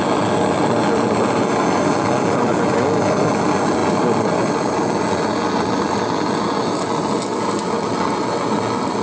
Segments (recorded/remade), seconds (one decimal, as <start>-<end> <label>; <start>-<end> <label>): 0.0-9.0 recorded